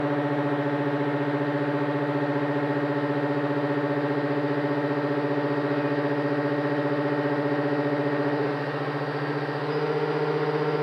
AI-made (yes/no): no